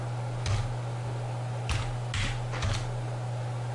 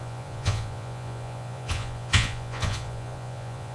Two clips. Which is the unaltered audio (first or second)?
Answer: first